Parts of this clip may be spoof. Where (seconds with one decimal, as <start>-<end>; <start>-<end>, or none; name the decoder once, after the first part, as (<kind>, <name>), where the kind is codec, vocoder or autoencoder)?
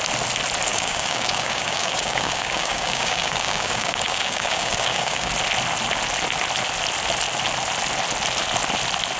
0.7-5.3 (codec, DAC)